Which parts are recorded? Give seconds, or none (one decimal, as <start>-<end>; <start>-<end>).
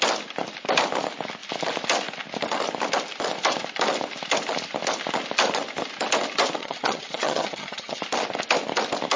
0.0-6.6; 8.0-9.2